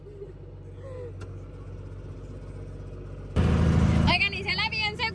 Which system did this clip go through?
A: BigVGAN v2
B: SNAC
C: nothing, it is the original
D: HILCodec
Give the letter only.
C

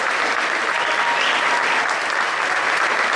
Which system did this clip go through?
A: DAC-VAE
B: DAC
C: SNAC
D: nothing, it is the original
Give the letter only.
D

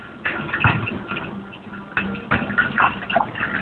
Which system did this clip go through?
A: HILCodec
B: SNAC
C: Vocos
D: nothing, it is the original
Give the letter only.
D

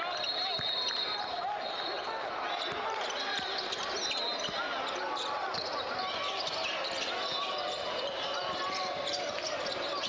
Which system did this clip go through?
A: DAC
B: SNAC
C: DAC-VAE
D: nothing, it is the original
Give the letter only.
D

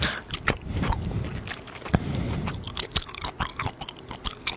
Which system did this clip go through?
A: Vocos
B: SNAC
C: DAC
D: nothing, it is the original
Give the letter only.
D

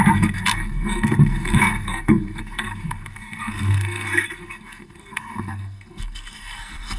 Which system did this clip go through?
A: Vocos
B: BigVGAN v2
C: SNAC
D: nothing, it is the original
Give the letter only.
C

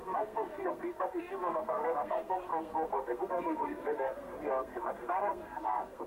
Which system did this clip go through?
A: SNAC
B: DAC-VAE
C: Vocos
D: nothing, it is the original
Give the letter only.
A